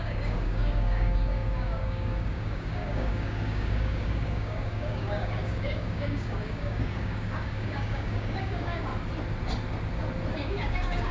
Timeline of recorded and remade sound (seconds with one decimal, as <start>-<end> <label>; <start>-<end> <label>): 0.0-8.9 remade; 8.9-10.3 recorded; 10.3-11.1 remade